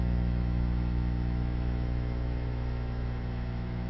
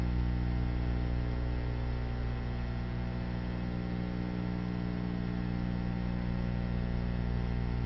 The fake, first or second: first